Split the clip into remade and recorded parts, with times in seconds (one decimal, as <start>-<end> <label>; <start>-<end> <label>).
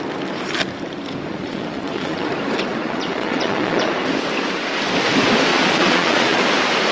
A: 0.0-1.3 recorded; 1.3-2.3 remade; 2.3-2.7 recorded; 2.7-3.9 remade; 3.9-5.5 recorded; 5.5-6.4 remade; 6.4-6.9 recorded